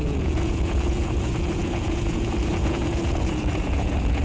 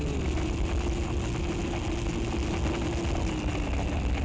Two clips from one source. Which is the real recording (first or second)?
second